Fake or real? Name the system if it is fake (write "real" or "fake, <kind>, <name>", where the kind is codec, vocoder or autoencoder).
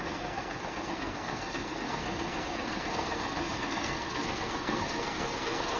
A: fake, codec, SNAC